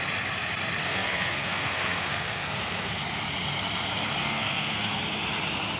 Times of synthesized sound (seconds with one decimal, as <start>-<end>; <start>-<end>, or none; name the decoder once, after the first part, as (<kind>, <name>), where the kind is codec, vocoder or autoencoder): 0.8-3.0 (codec, SNAC); 4.2-5.0